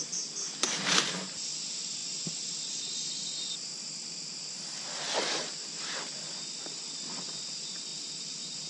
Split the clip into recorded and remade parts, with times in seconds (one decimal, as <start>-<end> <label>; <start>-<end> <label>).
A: 0.0-8.7 recorded

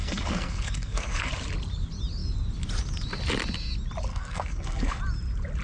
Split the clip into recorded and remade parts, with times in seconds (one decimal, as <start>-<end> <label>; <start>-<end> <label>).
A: 0.0-1.3 remade; 1.3-4.1 recorded; 4.1-5.0 remade; 5.0-5.6 recorded